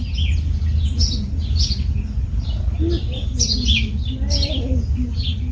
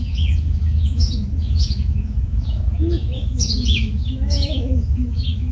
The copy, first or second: second